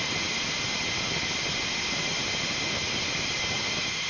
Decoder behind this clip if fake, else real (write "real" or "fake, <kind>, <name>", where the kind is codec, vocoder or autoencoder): real